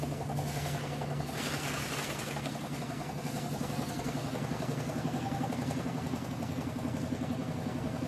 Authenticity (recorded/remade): remade